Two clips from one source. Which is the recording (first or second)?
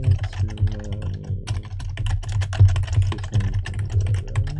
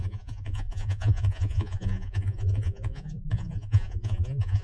first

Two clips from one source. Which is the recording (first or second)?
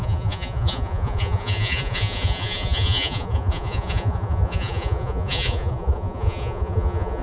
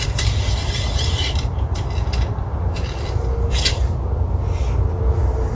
second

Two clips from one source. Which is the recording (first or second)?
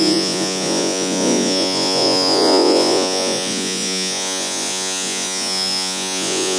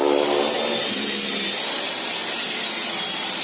second